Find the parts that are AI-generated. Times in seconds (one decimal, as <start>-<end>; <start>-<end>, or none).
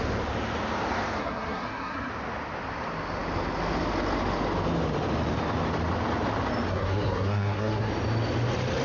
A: 1.2-2.1; 6.7-7.9